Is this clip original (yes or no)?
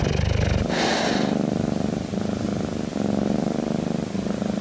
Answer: yes